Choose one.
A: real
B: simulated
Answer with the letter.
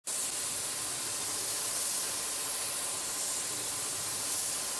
A